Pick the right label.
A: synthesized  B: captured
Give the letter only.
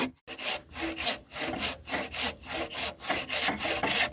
B